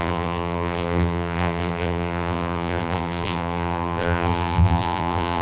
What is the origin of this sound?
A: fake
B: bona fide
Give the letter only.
A